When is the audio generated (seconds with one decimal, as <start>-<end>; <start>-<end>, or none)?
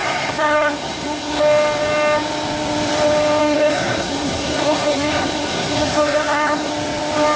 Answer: 0.0-1.4; 3.4-6.7